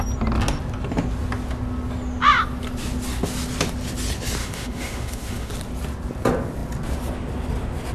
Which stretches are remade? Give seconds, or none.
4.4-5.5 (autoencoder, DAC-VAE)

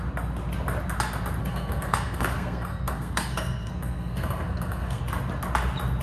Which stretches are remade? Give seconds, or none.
1.4-5.0 (codec, SNAC)

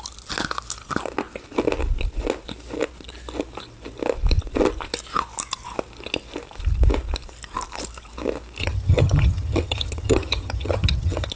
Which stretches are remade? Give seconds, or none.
8.6-11.3 (vocoder, HiFi-GAN)

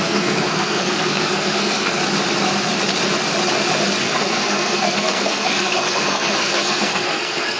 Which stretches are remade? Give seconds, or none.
0.0-2.0 (codec, SNAC); 4.0-7.6

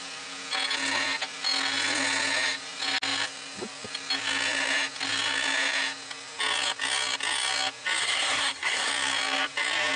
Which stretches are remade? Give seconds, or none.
8.0-8.9 (codec, SNAC)